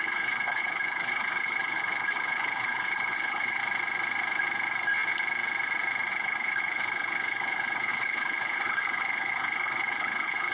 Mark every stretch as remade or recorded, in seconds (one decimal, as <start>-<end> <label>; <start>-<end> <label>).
0.0-3.6 remade; 3.6-6.1 recorded; 6.1-10.5 remade

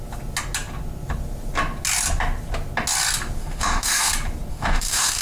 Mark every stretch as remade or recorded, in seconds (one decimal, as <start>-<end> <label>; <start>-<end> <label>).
0.0-3.4 recorded; 3.4-4.1 remade; 4.1-4.5 recorded; 4.5-5.2 remade

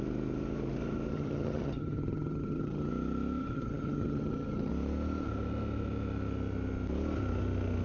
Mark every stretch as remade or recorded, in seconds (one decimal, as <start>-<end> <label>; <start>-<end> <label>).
0.0-1.1 recorded; 1.1-2.9 remade; 2.9-3.4 recorded; 3.4-4.7 remade; 4.7-7.8 recorded